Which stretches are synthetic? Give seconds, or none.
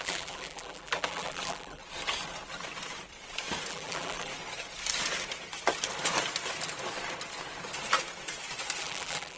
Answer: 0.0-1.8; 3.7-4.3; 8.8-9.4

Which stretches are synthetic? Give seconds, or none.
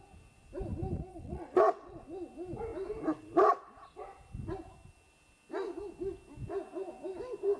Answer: 1.1-2.0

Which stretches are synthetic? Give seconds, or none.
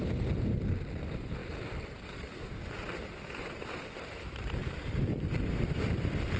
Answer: 0.0-1.4; 3.6-6.4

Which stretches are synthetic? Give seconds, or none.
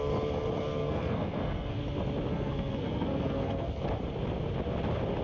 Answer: 0.8-1.8; 2.3-3.8